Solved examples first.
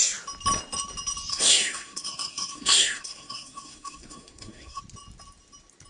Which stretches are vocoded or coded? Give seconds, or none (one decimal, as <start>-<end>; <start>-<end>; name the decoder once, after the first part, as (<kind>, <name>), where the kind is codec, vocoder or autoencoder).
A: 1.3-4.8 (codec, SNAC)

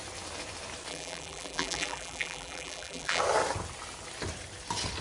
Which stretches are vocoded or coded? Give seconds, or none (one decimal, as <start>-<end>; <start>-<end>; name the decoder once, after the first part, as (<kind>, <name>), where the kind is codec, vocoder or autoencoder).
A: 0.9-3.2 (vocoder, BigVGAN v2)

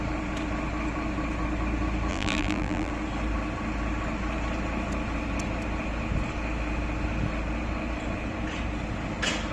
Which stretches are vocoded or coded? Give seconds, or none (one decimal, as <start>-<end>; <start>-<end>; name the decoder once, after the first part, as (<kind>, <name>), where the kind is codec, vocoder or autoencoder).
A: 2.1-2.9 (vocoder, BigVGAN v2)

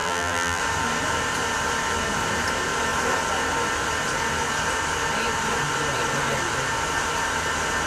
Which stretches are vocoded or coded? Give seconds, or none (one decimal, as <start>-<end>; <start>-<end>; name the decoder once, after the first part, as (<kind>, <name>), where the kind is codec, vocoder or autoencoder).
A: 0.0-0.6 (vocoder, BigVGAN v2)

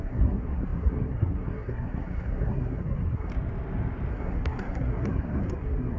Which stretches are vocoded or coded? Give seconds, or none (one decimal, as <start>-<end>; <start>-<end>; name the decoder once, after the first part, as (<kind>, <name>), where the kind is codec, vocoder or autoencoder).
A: 0.0-3.3 (codec, SNAC); 4.1-6.0

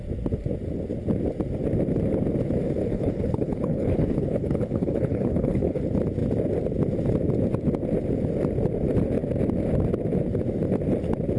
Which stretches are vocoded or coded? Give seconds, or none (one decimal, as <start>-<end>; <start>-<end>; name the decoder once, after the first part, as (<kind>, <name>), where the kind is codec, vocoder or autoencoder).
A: 2.8-5.8 (codec, HILCodec)

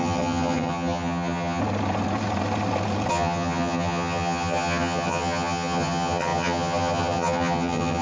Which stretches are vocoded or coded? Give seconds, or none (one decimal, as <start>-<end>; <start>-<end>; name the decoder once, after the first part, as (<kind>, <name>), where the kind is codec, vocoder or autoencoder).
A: 0.0-1.6 (vocoder, HiFi-GAN); 3.1-8.0

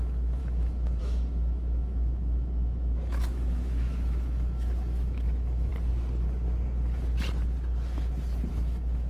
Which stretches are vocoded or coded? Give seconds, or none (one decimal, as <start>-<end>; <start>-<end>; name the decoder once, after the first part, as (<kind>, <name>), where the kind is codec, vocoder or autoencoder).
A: 0.0-5.7 (autoencoder, DAC-VAE); 8.5-9.1